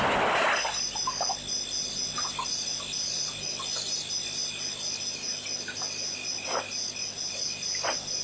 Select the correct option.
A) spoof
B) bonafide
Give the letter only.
B